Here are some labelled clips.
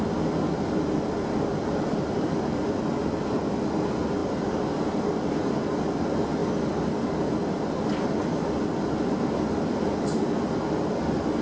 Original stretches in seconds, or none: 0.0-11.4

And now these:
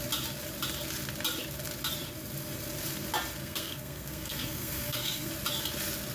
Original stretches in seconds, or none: 0.0-3.4; 5.3-6.1

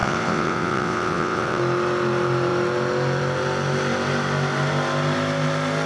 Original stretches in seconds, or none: 1.6-5.9

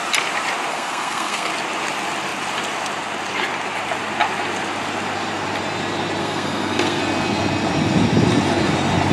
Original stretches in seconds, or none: 0.0-0.7; 1.5-6.2; 7.0-9.1

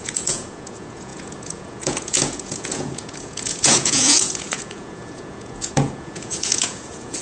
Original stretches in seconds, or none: none

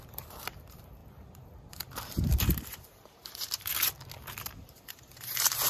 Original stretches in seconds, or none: 3.7-4.5